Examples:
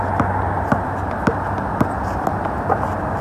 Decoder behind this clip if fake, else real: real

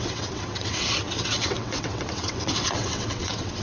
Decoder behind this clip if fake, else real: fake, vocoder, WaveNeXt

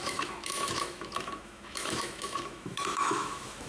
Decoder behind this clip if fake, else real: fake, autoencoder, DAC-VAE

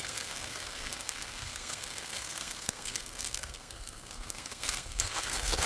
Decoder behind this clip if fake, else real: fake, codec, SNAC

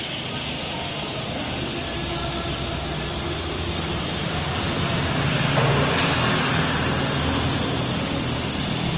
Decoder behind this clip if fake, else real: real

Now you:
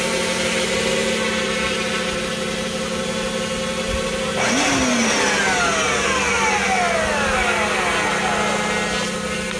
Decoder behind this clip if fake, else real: real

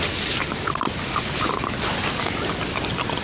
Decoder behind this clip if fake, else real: real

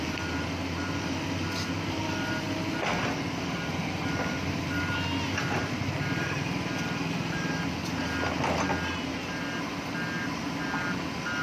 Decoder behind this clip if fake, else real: real